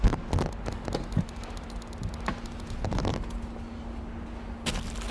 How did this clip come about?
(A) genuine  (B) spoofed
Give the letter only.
A